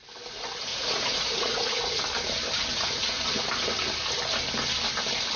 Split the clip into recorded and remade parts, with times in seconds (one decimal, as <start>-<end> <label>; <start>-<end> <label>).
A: 0.0-0.7 recorded; 0.7-2.0 remade; 2.0-2.7 recorded; 2.7-3.5 remade; 3.5-5.4 recorded